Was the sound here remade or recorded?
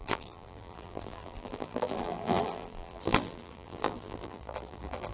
remade